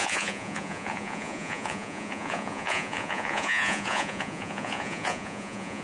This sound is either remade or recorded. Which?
remade